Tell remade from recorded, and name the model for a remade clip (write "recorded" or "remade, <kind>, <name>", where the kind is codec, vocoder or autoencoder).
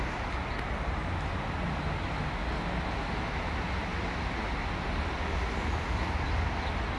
recorded